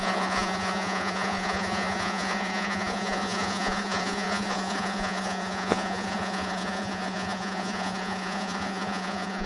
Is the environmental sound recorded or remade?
remade